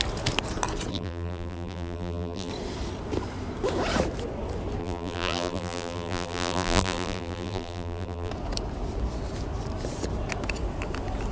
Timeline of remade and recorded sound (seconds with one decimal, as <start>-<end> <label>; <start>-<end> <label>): 0.0-0.9 recorded; 0.9-2.5 remade; 2.5-4.8 recorded; 4.8-8.3 remade; 8.3-11.3 recorded